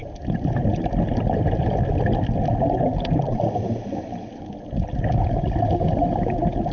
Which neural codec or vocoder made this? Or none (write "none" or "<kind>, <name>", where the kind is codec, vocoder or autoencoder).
none